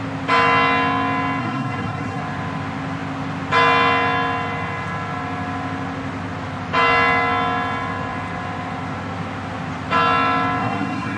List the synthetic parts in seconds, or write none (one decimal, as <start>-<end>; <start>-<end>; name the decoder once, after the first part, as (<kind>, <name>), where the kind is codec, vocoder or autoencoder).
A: 1.4-2.2 (codec, SNAC); 10.6-11.2